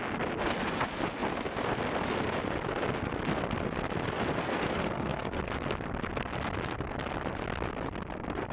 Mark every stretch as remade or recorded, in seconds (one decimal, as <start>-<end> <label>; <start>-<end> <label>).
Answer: 0.0-4.8 recorded; 4.8-5.4 remade; 5.4-8.5 recorded